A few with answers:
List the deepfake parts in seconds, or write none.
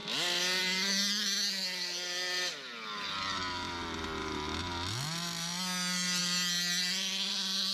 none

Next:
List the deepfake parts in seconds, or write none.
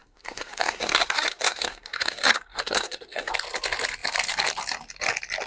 0.0-3.3 (codec, SNAC)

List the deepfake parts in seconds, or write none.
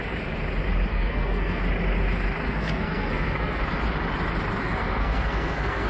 0.9-1.6 (codec, SNAC); 2.4-3.6; 4.6-5.9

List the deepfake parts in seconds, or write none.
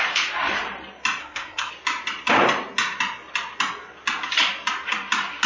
1.2-1.7 (codec, SNAC)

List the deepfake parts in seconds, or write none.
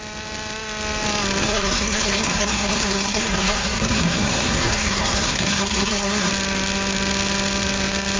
1.4-6.3 (codec, SNAC)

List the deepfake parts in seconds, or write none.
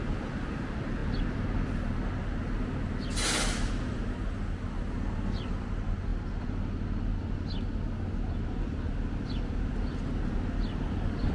none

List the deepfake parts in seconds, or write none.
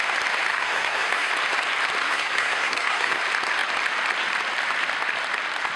0.5-1.3 (codec, SNAC); 2.0-3.2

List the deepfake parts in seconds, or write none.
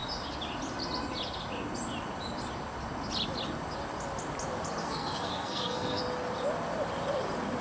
4.8-6.0 (codec, SNAC)